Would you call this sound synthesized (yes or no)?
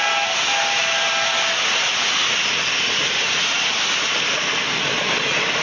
no